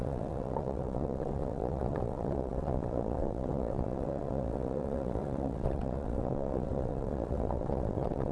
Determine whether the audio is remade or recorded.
remade